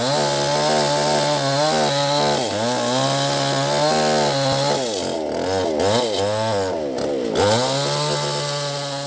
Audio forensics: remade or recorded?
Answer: recorded